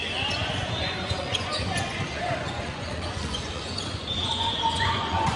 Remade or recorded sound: remade